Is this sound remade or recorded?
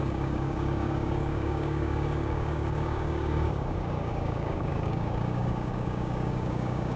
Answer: remade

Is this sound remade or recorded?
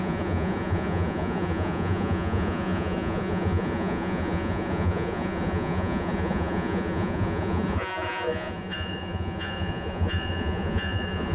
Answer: remade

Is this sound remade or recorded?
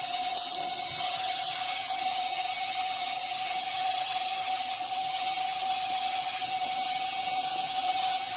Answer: remade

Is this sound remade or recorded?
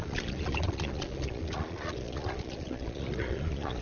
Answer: remade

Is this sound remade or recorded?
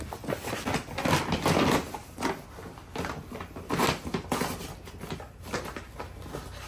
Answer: recorded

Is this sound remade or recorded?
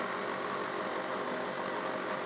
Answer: recorded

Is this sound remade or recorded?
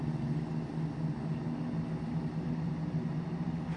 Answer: recorded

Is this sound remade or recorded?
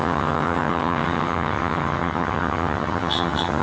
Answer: remade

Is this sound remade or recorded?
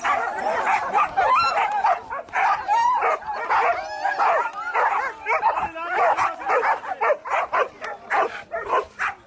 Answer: recorded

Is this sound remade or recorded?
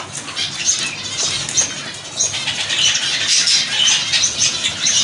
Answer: recorded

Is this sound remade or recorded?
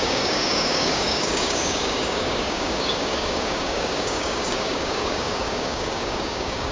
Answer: remade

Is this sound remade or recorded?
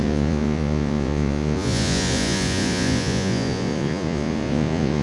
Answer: remade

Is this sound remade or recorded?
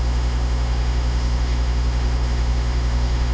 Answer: remade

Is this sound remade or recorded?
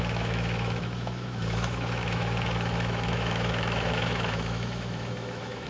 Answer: remade